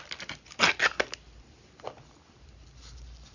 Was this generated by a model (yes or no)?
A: no